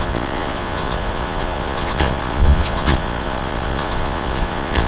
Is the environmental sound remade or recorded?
remade